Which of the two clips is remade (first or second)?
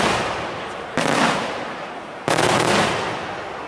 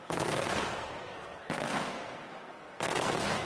second